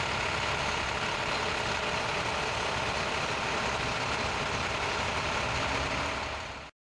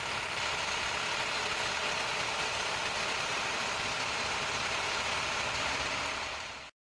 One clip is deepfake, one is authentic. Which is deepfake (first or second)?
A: second